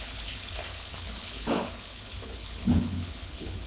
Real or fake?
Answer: fake